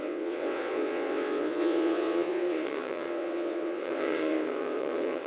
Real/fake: fake